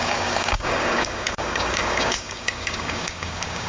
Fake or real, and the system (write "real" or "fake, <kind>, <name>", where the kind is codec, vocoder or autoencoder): fake, codec, DAC